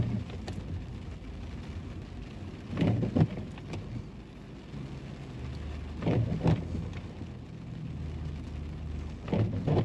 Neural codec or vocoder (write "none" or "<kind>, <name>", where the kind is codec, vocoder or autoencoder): none